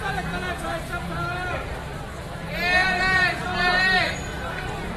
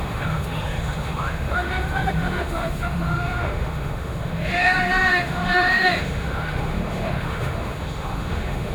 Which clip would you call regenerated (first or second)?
second